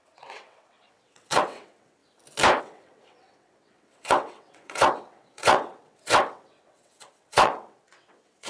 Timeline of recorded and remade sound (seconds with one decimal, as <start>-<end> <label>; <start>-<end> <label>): 0.0-2.0 remade; 2.0-2.6 recorded; 2.6-8.5 remade